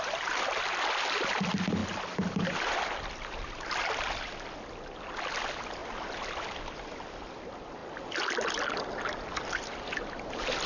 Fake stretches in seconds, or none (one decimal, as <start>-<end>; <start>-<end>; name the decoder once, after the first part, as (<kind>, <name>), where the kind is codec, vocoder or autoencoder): none